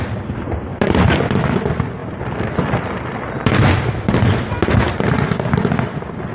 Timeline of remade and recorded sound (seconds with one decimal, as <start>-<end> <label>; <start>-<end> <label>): 0.0-0.7 recorded; 0.7-1.2 remade; 1.2-6.3 recorded